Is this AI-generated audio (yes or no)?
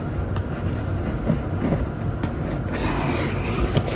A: no